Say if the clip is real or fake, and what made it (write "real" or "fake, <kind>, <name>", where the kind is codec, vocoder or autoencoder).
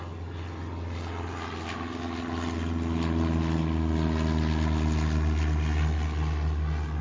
real